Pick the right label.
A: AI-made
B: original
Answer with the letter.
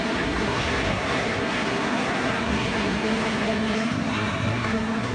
A